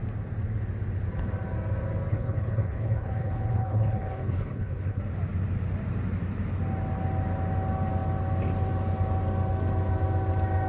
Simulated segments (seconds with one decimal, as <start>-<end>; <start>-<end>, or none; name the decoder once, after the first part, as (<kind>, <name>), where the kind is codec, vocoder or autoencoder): 2.1-5.0 (codec, HILCodec)